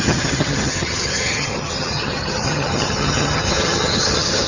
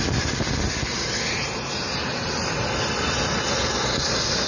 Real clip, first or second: second